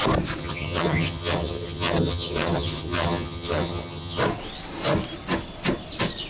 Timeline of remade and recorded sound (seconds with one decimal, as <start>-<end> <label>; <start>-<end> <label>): 0.0-0.4 recorded; 0.4-4.2 remade; 4.2-6.3 recorded